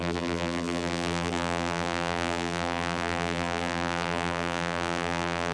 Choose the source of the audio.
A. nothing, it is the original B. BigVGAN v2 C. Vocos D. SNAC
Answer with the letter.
B